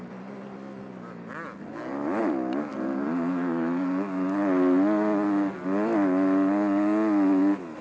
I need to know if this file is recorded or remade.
recorded